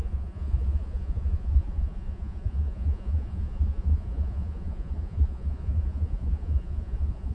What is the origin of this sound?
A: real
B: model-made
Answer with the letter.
B